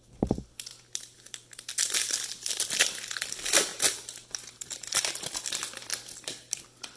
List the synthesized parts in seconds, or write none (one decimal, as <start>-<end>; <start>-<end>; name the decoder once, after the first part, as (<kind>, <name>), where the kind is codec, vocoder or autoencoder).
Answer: 1.0-3.7 (vocoder, BigVGAN v2); 4.6-7.0